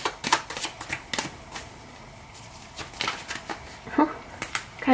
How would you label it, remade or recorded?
recorded